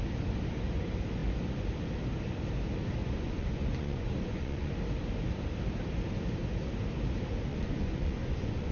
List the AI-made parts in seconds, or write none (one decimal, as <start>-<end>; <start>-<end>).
3.0-4.7; 7.5-8.7